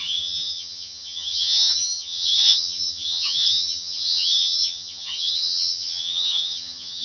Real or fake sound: fake